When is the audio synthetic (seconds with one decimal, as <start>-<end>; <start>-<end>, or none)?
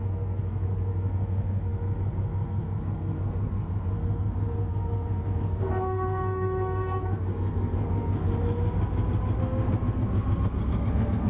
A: 0.0-8.3; 9.4-11.3